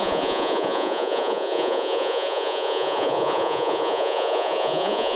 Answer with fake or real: fake